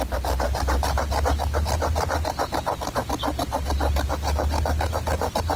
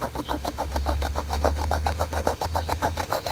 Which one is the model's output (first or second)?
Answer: second